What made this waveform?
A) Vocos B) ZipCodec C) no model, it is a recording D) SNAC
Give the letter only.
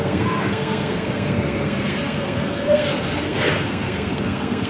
D